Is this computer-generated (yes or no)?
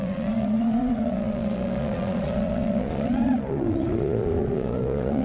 yes